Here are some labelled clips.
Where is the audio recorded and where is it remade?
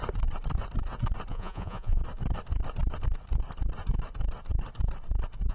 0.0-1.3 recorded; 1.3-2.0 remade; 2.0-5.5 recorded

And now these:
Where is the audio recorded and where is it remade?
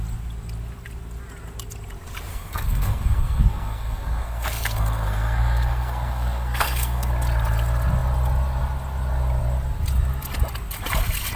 0.0-2.3 recorded; 2.3-7.1 remade; 7.1-11.4 recorded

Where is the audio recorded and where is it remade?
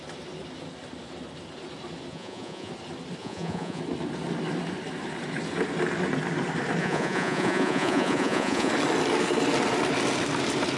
0.0-2.1 recorded; 2.1-2.7 remade; 2.7-3.2 recorded; 3.2-3.8 remade; 3.8-6.8 recorded; 6.8-8.7 remade; 8.7-10.8 recorded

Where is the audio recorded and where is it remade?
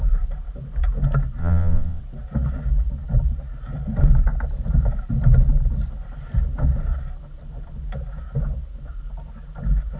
0.0-1.4 recorded; 1.4-2.0 remade; 2.0-10.0 recorded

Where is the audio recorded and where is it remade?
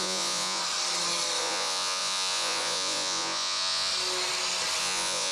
0.0-0.6 remade; 0.6-1.4 recorded; 1.4-3.9 remade; 3.9-4.8 recorded; 4.8-5.3 remade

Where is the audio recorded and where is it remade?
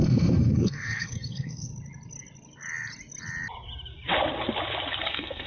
0.0-1.7 remade; 1.7-5.0 recorded; 5.0-5.5 remade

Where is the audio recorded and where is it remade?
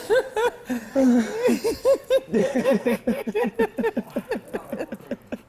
0.0-2.4 recorded; 2.4-3.5 remade; 3.5-5.5 recorded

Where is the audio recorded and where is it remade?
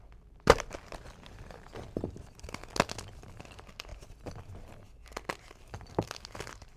0.0-6.8 recorded